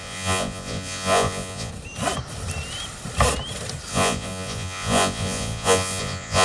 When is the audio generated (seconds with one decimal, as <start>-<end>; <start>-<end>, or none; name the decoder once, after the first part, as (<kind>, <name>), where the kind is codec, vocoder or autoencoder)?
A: 0.0-1.7 (vocoder, Vocos); 3.9-6.4

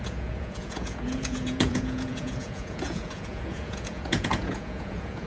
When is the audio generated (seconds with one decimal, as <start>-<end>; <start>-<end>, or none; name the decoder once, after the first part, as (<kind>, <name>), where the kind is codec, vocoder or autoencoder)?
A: 0.0-5.3 (vocoder, Vocos)

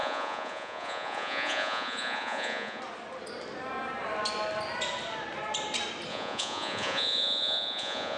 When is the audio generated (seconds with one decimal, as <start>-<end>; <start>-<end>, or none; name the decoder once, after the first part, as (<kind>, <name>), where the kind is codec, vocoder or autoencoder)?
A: 0.0-2.8 (vocoder, Vocos); 6.1-8.2

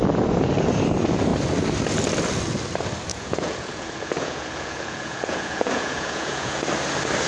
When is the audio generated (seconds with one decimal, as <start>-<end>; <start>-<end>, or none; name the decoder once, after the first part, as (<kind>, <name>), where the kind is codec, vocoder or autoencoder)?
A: 3.1-6.6 (vocoder, Vocos)

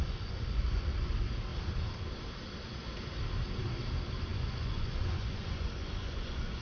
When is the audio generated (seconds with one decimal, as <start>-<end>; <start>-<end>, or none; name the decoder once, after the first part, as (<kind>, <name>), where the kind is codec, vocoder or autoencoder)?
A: 0.0-1.1 (vocoder, Vocos); 4.3-6.6